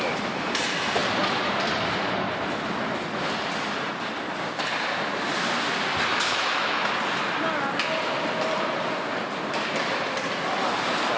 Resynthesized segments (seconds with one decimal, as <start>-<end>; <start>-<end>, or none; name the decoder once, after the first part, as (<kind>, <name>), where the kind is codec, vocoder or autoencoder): 6.1-6.9 (autoencoder, DAC-VAE)

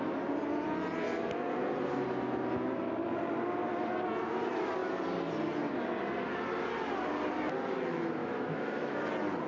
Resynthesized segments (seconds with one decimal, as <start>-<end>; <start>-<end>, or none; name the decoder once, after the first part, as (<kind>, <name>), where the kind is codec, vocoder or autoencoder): 8.2-9.1 (autoencoder, DAC-VAE)

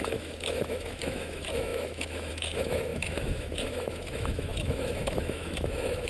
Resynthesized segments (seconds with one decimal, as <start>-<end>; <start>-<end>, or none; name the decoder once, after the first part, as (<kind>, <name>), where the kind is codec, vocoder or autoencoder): 0.0-6.1 (autoencoder, DAC-VAE)

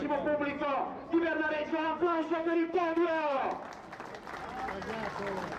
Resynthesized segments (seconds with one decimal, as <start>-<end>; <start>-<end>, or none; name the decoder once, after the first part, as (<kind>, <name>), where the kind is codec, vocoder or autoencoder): 1.7-3.4 (autoencoder, DAC-VAE)